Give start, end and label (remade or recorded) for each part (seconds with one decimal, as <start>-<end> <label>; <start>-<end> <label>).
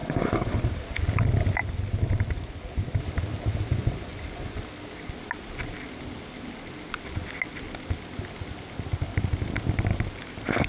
0.0-0.5 remade; 0.5-3.7 recorded; 3.7-4.6 remade; 4.6-10.7 recorded